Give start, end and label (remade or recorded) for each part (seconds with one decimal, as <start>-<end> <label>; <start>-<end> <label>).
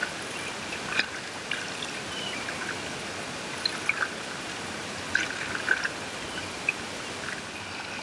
0.0-8.0 recorded